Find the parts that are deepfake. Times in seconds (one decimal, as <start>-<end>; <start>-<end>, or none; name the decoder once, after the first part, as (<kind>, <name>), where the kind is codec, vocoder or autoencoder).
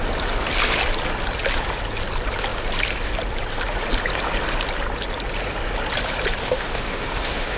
6.4-7.6 (autoencoder, DAC-VAE)